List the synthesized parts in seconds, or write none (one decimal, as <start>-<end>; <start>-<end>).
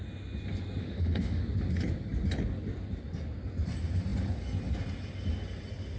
0.8-1.4